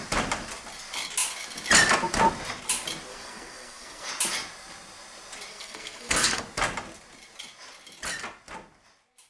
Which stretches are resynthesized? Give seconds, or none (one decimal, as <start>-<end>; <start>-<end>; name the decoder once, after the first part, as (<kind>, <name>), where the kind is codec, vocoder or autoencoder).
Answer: 3.1-4.1 (codec, SNAC); 5.5-6.4